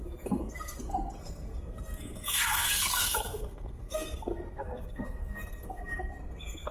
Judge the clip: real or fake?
fake